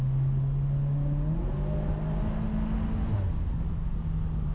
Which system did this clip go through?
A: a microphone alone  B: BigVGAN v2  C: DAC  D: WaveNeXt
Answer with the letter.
A